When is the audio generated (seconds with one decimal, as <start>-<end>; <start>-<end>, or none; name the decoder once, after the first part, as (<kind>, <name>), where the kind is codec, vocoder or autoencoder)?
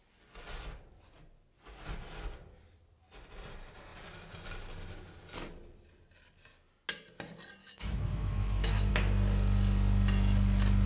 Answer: 7.6-8.9 (autoencoder, DAC-VAE)